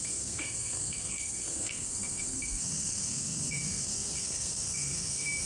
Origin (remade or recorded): remade